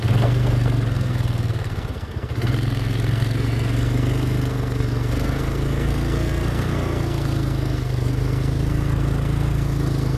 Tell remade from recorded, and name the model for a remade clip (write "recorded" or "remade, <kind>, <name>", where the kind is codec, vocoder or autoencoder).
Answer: remade, codec, SNAC